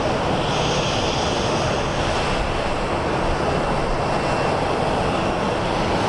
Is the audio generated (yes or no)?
no